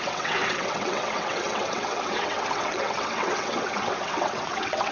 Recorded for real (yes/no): no